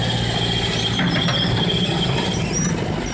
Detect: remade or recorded recorded